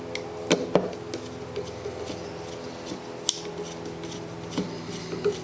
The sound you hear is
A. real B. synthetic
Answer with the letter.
A